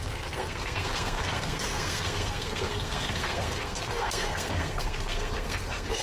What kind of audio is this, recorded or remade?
remade